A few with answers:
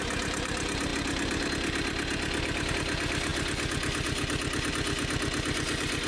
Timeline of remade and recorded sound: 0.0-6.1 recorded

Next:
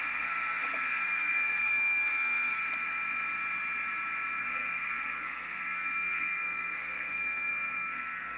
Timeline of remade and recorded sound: 0.0-2.6 remade; 2.6-4.4 recorded; 4.4-8.4 remade

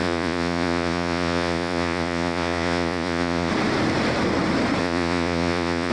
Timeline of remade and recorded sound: 0.0-3.5 remade; 3.5-4.8 recorded; 4.8-5.9 remade